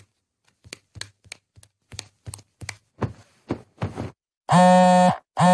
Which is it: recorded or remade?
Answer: recorded